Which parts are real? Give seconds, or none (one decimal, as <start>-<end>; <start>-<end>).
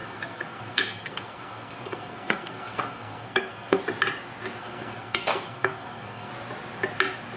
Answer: 3.8-4.6; 6.3-7.4